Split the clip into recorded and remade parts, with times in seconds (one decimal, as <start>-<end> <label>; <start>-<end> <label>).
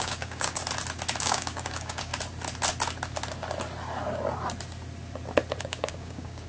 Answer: 0.0-0.6 remade; 0.6-1.2 recorded; 1.2-2.1 remade; 2.1-5.6 recorded; 5.6-6.5 remade